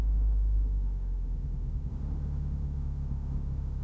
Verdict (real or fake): fake